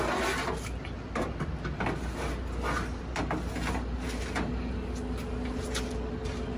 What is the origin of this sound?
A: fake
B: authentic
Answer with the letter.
B